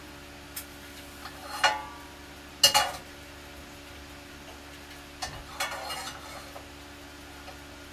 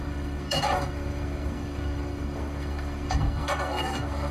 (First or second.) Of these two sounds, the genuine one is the first